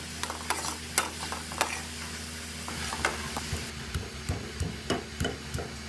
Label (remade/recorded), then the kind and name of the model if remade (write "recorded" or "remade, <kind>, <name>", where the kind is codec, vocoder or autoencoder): recorded